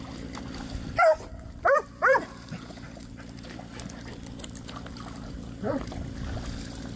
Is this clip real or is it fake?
real